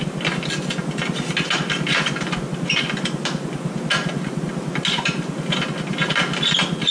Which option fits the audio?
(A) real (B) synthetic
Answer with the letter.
A